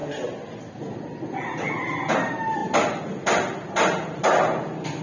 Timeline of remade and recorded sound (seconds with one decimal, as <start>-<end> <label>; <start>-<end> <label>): 0.0-5.0 recorded